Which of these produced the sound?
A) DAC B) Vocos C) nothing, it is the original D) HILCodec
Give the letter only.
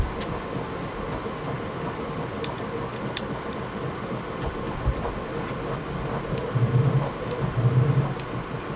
C